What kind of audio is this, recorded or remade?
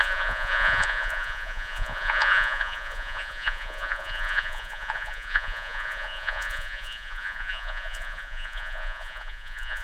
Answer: remade